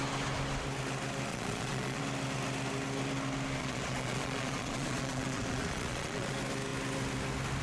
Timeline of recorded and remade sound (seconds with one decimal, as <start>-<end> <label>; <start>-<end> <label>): 0.0-1.3 recorded; 1.3-2.0 remade; 2.0-3.6 recorded; 3.6-6.3 remade; 6.3-7.6 recorded